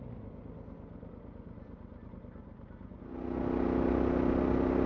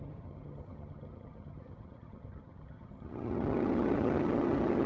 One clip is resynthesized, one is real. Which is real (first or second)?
first